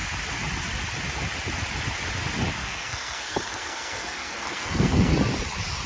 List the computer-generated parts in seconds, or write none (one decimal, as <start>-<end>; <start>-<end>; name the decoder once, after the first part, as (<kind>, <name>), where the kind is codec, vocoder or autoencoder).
2.6-5.1 (codec, SNAC)